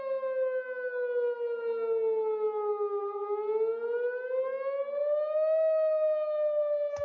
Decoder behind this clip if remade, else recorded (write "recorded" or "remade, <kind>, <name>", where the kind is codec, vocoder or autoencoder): recorded